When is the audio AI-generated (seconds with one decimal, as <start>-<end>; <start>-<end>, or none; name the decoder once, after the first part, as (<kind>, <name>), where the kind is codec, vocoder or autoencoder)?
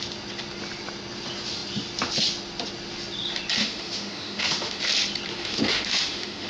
3.6-4.8 (autoencoder, DAC-VAE); 5.3-6.5